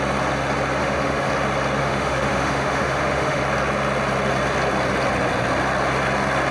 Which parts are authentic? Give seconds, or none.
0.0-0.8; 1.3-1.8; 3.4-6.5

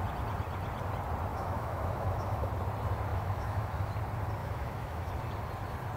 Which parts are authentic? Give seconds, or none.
0.0-1.3; 2.5-3.1; 3.9-4.4; 5.1-6.0

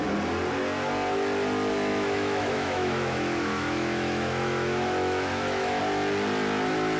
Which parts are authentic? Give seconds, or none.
0.0-1.9; 5.8-7.0

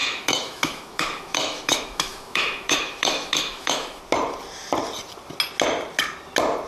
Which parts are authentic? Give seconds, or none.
4.0-6.7

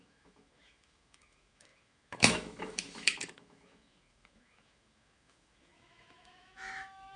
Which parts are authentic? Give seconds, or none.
none

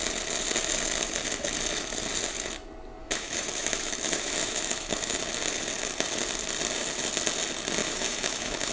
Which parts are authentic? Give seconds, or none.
0.0-3.0; 5.2-7.8

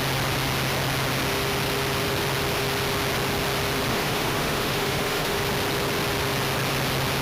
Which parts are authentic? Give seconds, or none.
0.0-3.9; 5.4-7.2

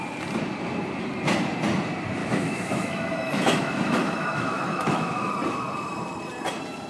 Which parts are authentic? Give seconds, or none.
0.0-2.2; 5.3-6.9